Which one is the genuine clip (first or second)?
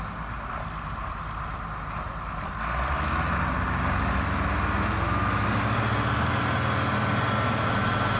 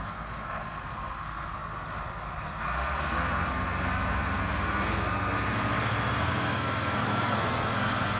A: first